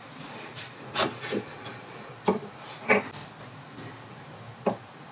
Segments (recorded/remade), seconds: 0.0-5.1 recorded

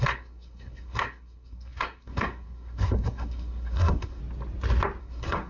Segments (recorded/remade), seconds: 0.0-4.2 remade; 4.2-5.0 recorded; 5.0-5.5 remade

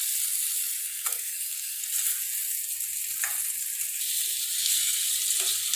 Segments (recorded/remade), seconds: 0.0-0.8 recorded; 0.8-1.8 remade; 1.8-4.6 recorded; 4.6-5.1 remade; 5.1-5.8 recorded